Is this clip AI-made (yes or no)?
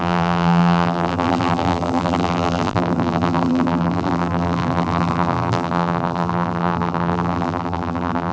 yes